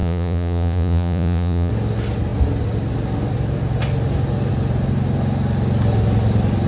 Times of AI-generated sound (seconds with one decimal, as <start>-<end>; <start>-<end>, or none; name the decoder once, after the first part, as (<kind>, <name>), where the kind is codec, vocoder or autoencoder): 0.0-1.7 (vocoder, Vocos)